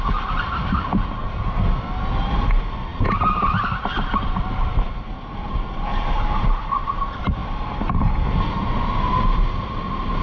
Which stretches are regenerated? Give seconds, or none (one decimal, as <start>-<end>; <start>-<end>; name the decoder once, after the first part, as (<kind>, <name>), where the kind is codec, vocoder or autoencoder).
none